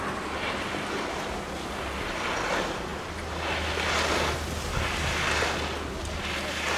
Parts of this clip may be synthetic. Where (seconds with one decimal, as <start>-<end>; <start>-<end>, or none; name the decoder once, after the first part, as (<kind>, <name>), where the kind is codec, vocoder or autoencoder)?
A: none